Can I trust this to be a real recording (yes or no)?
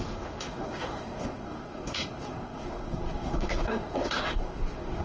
no